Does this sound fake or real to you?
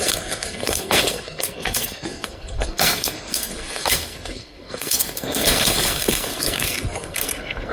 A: fake